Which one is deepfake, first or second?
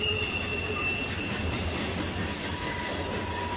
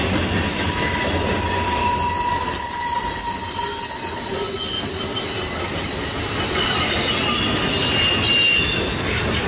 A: first